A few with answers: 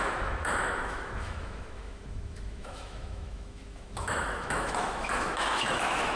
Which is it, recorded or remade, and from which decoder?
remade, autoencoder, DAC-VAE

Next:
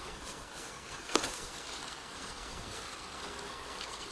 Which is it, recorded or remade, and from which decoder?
remade, codec, SNAC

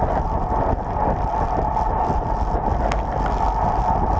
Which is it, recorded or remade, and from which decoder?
recorded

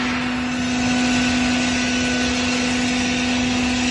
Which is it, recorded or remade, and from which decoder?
recorded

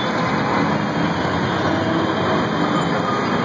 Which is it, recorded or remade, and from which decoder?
recorded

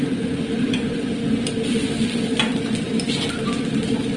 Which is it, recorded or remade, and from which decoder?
recorded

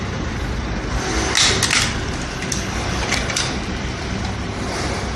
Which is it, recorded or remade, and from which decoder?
recorded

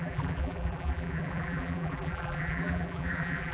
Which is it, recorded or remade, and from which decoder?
remade, vocoder, BigVGAN v2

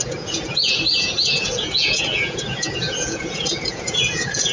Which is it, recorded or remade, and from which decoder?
remade, vocoder, Vocos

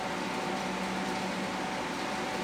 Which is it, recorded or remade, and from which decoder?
recorded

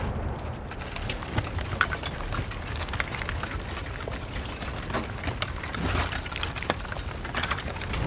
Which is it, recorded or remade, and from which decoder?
recorded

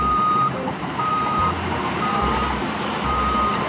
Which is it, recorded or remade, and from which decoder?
remade, vocoder, BigVGAN v2